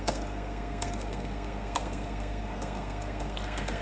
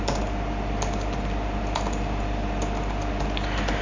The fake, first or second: first